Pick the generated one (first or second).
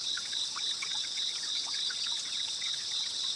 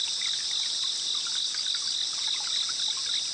first